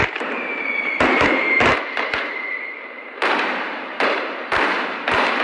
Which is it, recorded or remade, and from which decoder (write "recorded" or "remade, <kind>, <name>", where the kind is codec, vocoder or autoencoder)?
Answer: remade, vocoder, BigVGAN v2